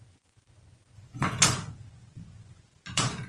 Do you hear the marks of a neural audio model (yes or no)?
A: yes